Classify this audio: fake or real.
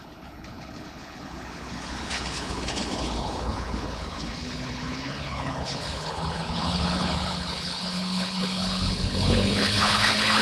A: fake